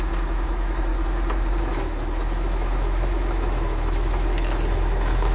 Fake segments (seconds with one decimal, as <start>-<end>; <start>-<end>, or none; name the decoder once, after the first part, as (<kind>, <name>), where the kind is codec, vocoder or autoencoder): 0.0-0.9 (autoencoder, DAC-VAE); 1.6-5.3

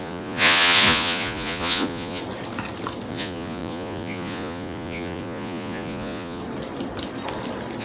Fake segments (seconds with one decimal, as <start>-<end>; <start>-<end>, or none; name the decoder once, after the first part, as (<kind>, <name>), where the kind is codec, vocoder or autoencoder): 0.0-2.2 (vocoder, Vocos); 3.1-6.4

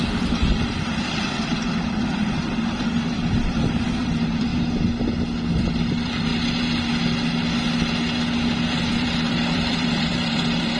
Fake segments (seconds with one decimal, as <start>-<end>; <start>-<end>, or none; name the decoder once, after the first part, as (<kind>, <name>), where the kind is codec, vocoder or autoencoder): 0.0-4.5 (vocoder, BigVGAN v2); 5.5-6.3; 8.7-10.8